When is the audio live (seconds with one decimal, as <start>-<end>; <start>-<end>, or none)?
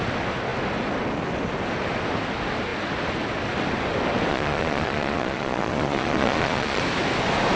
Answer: 0.0-4.3; 6.8-7.6